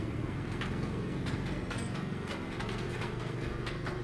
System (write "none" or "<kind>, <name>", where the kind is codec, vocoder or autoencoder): codec, SNAC